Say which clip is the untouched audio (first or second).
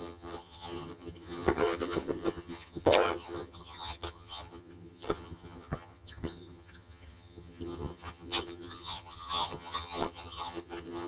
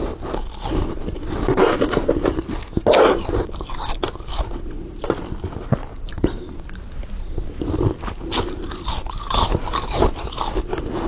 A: second